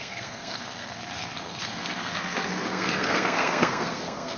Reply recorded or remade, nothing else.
remade